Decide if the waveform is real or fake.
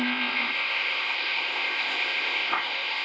fake